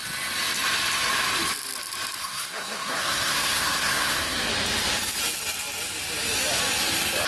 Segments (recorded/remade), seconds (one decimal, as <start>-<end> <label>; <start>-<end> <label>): 0.0-2.2 recorded; 2.2-4.5 remade; 4.5-7.3 recorded